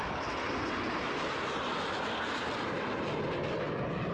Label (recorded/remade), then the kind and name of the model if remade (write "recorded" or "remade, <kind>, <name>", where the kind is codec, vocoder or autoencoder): remade, vocoder, BigVGAN v2